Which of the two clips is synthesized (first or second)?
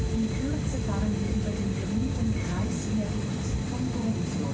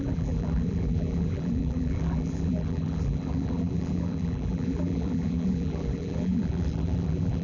second